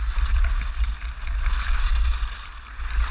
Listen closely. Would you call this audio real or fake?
real